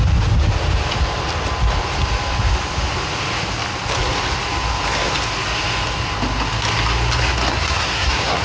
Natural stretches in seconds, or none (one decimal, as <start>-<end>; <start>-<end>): 0.0-7.5